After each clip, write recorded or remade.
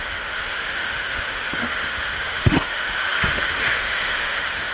remade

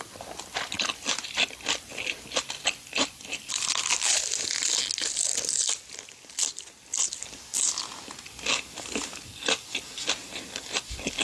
recorded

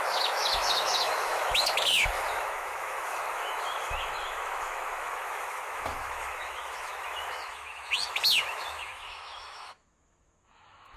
remade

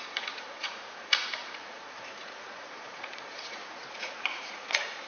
remade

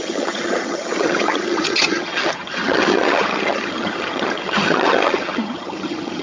remade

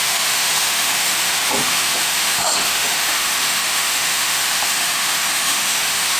remade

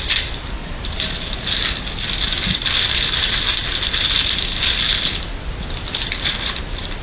recorded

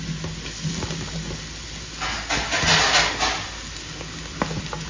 recorded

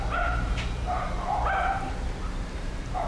remade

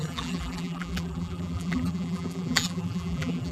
remade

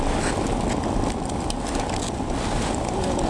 recorded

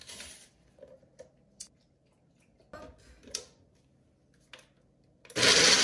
recorded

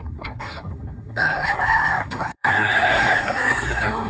remade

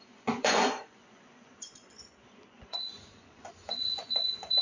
remade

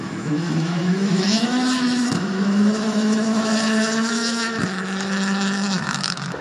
remade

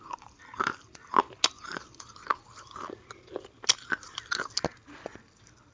recorded